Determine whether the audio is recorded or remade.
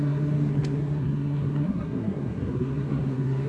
remade